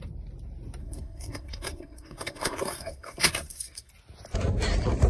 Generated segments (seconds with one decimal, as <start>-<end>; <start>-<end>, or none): 0.8-3.9